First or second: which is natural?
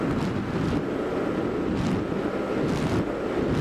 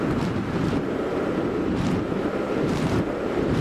first